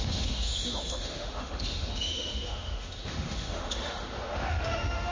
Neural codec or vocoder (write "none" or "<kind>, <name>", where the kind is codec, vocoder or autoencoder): autoencoder, DAC-VAE